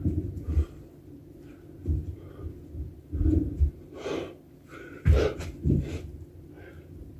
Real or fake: fake